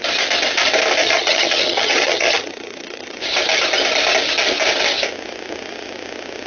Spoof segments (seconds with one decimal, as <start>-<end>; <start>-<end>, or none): 1.0-3.2